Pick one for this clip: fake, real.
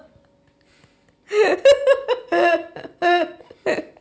real